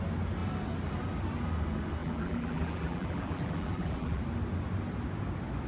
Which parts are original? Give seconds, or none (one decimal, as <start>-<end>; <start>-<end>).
0.0-2.0; 4.2-5.7